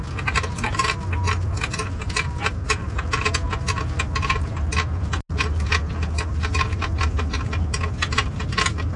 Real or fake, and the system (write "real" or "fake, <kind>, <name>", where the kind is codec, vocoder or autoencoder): real